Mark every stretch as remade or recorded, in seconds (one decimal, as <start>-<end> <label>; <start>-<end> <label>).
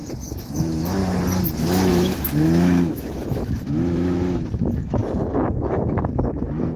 0.0-1.0 remade; 1.0-1.6 recorded; 1.6-5.0 remade; 5.0-5.5 recorded; 5.5-6.8 remade